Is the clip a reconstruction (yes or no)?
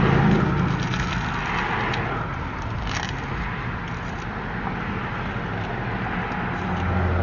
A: no